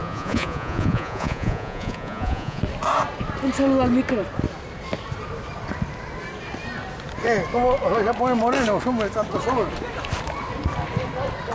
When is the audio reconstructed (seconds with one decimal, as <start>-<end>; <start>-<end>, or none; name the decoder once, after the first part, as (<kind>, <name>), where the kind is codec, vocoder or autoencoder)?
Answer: 0.0-2.6 (vocoder, Vocos)